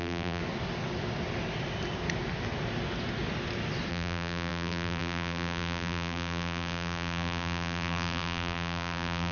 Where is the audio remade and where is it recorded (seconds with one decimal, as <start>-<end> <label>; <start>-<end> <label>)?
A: 0.0-0.4 remade; 0.4-3.9 recorded; 3.9-9.3 remade